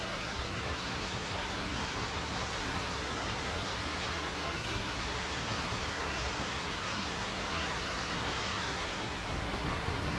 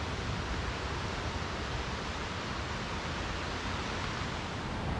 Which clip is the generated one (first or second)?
first